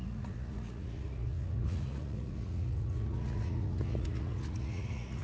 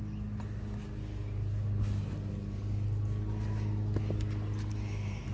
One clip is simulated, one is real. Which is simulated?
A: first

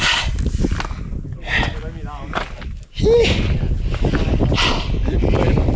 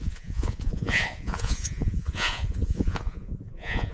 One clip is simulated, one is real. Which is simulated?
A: second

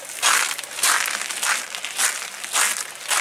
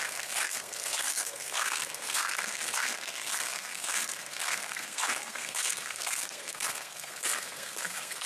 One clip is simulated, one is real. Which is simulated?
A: second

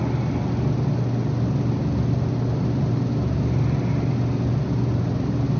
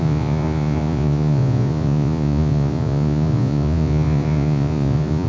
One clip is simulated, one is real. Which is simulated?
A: second